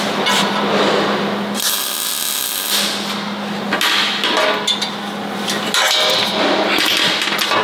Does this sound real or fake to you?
real